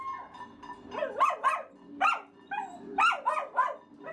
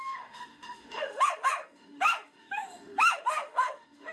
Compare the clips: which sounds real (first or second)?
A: first